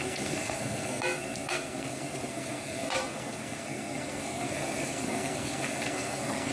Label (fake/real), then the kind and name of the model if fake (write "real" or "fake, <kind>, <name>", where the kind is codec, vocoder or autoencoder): fake, codec, SNAC